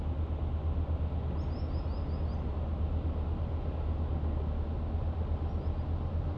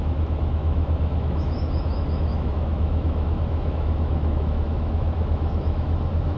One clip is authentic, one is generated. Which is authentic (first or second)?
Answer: first